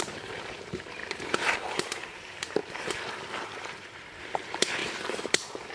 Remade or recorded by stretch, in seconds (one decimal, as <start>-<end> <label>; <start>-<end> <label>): 0.0-5.7 remade